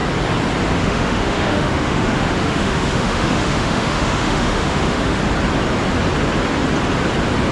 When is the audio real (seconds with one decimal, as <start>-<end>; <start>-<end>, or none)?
0.0-0.8; 5.2-7.5